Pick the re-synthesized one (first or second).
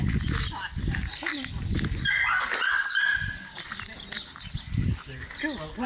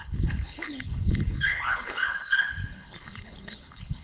second